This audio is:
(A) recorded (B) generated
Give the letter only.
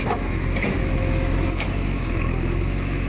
B